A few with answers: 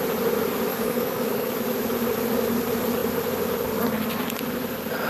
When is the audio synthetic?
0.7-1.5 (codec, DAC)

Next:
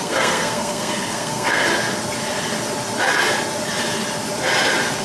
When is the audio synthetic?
0.0-1.7 (codec, SNAC)

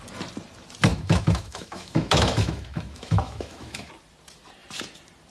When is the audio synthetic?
0.9-3.9 (autoencoder, DAC-VAE)

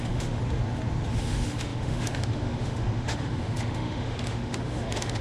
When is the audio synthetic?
0.0-0.4 (autoencoder, DAC-VAE); 1.1-5.2